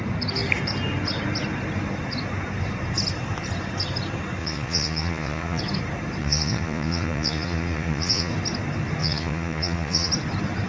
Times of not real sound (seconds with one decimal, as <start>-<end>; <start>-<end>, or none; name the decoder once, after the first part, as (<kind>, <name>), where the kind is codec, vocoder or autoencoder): 4.4-5.6 (vocoder, Vocos); 6.2-8.3; 9.0-10.1